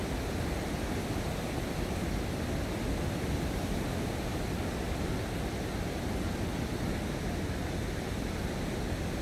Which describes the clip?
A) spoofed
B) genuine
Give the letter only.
B